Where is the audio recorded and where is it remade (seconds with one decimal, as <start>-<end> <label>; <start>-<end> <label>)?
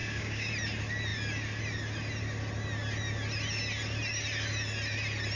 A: 0.0-0.5 remade; 0.5-5.4 recorded